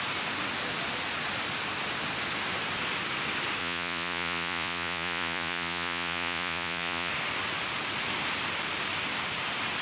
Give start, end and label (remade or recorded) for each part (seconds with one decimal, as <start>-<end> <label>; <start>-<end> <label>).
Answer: 0.0-3.6 recorded; 3.6-7.1 remade; 7.1-9.8 recorded